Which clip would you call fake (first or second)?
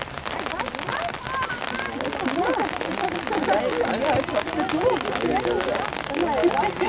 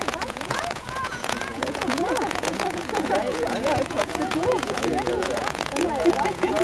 second